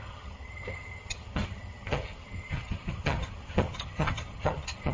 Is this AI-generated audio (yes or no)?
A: yes